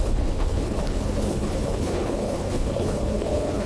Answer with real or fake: fake